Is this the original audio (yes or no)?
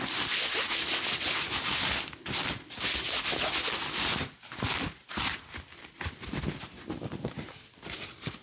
yes